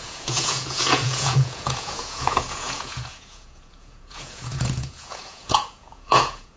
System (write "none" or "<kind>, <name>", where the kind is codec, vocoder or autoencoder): vocoder, Vocos